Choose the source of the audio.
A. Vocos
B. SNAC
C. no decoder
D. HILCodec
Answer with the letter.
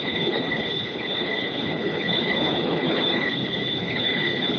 D